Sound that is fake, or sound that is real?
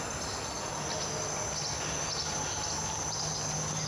real